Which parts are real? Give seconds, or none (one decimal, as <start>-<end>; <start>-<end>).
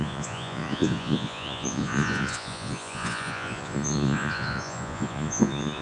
none